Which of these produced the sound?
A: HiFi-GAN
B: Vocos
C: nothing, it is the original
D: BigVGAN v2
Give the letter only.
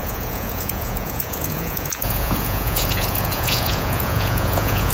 B